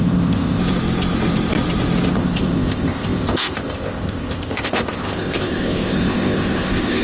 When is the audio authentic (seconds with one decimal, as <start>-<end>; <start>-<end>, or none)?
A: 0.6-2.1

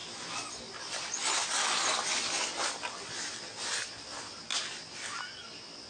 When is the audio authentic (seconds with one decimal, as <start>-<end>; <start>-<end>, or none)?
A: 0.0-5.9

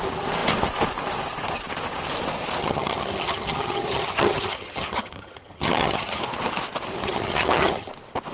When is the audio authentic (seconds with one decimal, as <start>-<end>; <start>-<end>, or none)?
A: 0.0-2.6; 6.2-7.0; 7.9-8.3

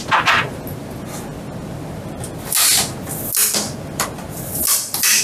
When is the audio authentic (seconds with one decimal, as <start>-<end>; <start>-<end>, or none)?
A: 0.0-5.2

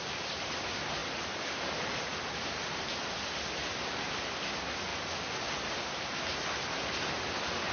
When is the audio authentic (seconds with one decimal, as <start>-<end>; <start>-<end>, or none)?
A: 0.0-2.9; 3.8-4.9; 5.7-7.7